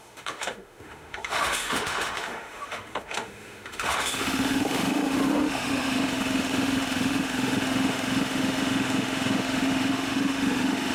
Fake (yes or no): yes